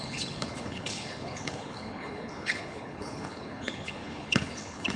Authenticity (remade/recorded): remade